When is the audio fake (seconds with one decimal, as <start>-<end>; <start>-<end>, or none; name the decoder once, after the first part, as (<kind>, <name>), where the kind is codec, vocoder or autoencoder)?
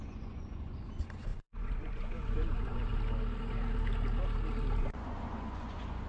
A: 0.0-2.8 (vocoder, Vocos); 4.8-6.1